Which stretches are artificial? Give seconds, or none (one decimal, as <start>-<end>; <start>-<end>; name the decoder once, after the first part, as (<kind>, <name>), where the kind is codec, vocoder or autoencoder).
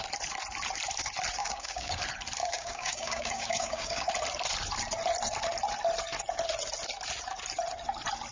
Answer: 1.4-2.0 (codec, DAC); 2.4-4.1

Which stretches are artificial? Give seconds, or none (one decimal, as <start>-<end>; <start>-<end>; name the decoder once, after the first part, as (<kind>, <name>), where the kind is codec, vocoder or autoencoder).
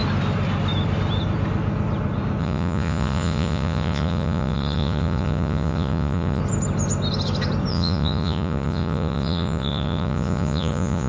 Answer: 2.4-6.4 (vocoder, Vocos); 7.7-11.1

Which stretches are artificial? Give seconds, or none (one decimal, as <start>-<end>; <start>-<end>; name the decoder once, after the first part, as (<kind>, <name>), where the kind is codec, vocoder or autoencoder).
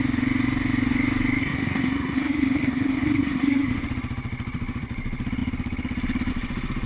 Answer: 1.4-3.7 (codec, SNAC)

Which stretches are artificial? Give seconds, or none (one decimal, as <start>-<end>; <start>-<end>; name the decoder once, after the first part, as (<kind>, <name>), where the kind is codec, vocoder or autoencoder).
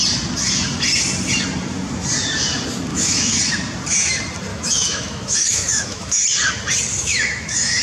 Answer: 2.9-3.4 (autoencoder, DAC-VAE); 4.5-6.2; 6.9-7.8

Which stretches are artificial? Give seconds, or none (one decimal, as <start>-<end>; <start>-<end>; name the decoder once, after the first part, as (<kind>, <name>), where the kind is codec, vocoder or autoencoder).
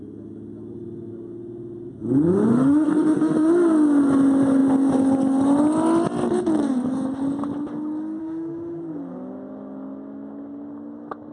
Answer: 2.5-3.5 (autoencoder, DAC-VAE); 8.2-8.8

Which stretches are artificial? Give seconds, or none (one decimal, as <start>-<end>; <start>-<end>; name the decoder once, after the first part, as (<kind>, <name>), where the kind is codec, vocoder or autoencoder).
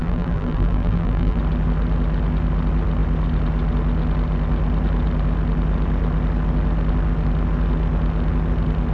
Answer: 0.0-1.4 (vocoder, BigVGAN v2)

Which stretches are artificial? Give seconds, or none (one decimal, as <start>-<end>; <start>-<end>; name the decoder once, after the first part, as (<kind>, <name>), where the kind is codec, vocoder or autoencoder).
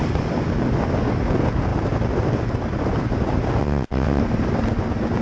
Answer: 3.6-4.2 (vocoder, WaveNeXt)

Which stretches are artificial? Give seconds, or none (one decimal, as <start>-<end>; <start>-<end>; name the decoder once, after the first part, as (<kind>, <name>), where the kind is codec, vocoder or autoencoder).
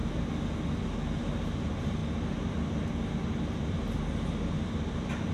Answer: 1.2-2.0 (vocoder, BigVGAN v2)